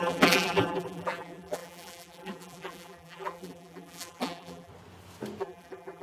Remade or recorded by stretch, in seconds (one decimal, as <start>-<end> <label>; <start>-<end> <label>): 0.0-4.7 remade; 4.7-5.4 recorded; 5.4-6.0 remade